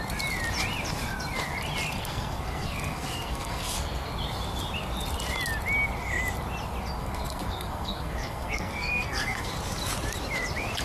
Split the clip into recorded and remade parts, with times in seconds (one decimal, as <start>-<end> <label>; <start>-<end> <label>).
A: 0.0-2.0 recorded; 2.0-4.1 remade; 4.1-7.0 recorded; 7.0-9.6 remade; 9.6-10.8 recorded